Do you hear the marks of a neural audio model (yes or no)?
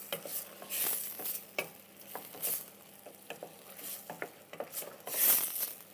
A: no